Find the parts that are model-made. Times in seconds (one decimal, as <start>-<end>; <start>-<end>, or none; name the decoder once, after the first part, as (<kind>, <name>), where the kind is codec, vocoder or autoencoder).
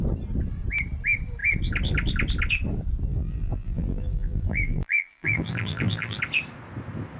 3.1-6.2 (vocoder, BigVGAN v2)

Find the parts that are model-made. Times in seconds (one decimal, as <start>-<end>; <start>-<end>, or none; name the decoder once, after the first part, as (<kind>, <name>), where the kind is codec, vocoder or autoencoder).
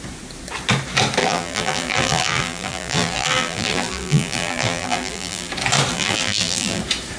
1.2-5.5 (vocoder, BigVGAN v2); 5.9-6.8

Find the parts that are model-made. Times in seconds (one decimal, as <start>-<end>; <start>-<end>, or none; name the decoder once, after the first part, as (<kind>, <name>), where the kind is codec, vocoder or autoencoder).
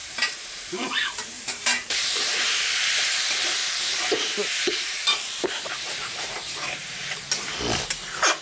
0.0-2.1 (vocoder, BigVGAN v2); 3.6-7.2